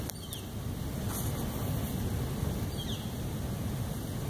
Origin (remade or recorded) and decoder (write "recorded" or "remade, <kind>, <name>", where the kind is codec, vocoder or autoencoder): recorded